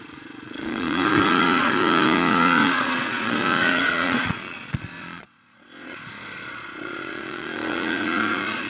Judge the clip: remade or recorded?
remade